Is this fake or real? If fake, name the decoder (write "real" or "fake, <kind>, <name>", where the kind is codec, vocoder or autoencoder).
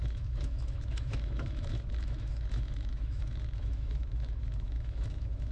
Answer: fake, autoencoder, DAC-VAE